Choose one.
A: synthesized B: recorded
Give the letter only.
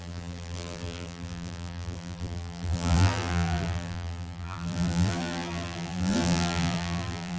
A